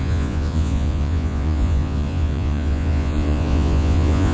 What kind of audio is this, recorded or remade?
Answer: remade